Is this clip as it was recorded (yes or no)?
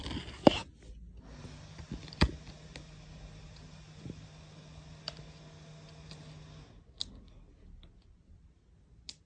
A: yes